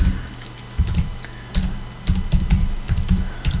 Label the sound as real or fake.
real